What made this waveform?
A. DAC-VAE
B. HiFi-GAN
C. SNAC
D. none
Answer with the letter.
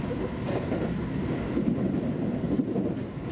D